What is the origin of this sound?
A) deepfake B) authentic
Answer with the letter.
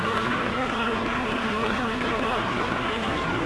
A